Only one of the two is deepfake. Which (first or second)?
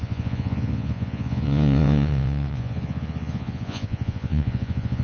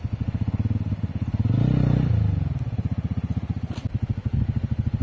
first